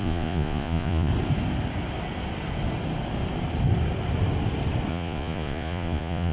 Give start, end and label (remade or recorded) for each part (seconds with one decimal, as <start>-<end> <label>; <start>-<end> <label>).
0.0-1.1 remade; 1.1-4.9 recorded; 4.9-6.3 remade